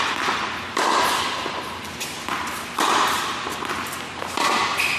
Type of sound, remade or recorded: recorded